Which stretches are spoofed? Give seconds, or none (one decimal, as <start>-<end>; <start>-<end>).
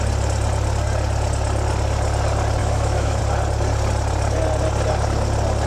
2.6-3.2